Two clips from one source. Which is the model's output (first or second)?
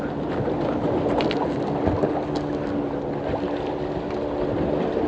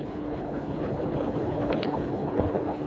second